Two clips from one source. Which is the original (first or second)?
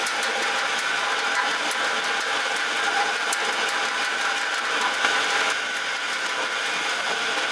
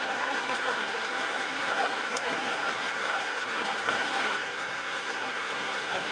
first